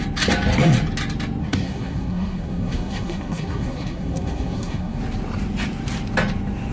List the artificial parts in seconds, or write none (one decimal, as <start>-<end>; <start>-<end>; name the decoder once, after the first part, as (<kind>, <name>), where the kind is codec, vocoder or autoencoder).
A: 1.4-5.0 (codec, SNAC)